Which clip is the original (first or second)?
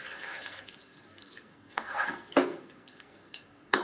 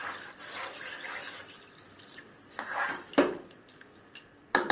second